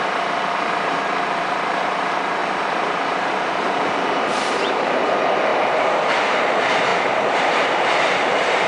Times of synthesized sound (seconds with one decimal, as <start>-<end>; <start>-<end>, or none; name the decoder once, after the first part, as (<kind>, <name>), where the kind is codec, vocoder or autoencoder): 0.0-8.7 (vocoder, BigVGAN v2)